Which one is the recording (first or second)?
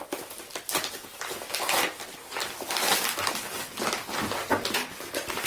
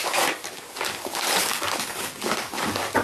first